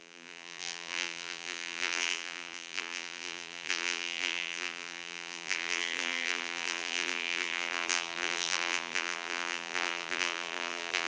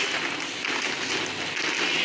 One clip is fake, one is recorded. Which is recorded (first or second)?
second